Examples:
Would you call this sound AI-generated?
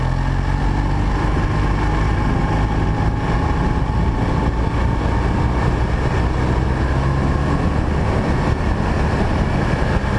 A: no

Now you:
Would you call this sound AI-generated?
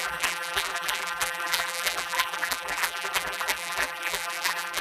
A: yes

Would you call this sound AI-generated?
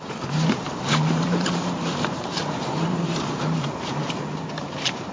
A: yes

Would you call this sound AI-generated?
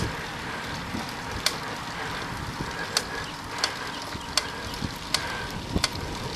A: no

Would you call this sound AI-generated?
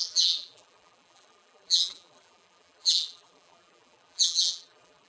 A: yes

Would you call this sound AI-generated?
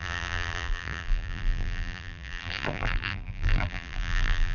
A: yes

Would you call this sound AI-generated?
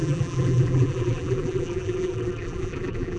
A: yes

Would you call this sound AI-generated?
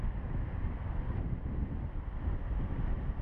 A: yes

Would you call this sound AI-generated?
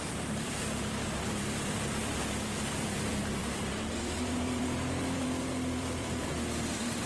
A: yes